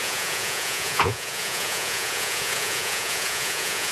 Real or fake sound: fake